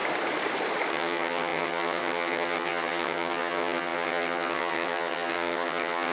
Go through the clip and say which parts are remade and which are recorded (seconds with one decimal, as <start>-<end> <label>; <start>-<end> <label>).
0.0-0.9 recorded; 0.9-6.1 remade